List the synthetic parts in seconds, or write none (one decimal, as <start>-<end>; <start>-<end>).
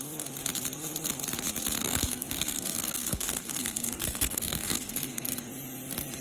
1.8-5.5